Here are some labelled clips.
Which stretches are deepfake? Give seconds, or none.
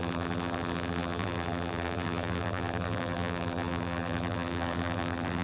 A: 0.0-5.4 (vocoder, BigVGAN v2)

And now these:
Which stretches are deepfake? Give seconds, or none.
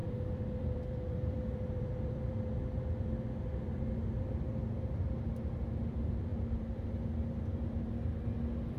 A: 0.0-4.7 (vocoder, BigVGAN v2); 6.3-8.8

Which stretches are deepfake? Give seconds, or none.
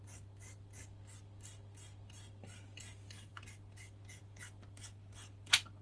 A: none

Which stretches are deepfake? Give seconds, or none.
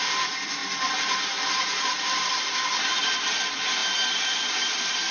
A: 0.0-3.8 (vocoder, BigVGAN v2); 4.5-5.1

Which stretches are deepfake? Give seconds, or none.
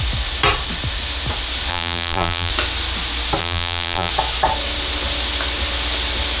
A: 1.7-2.5 (vocoder, BigVGAN v2); 3.4-4.1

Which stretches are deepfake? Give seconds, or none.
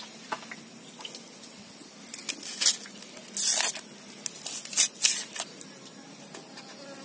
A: none